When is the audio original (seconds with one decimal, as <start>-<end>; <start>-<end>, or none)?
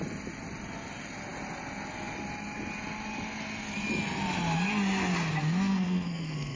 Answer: 0.0-5.7